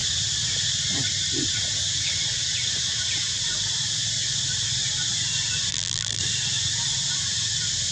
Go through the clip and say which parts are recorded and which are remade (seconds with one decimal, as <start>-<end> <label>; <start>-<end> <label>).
0.0-5.7 recorded; 5.7-6.2 remade; 6.2-7.9 recorded